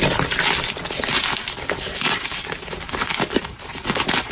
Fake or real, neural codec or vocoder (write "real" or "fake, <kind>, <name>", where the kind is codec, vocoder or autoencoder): real